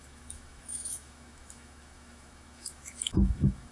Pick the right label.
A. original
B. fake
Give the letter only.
B